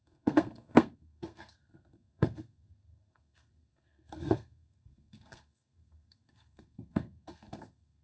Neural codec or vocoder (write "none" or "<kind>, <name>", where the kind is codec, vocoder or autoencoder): codec, SNAC